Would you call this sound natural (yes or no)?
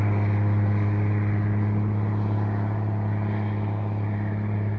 yes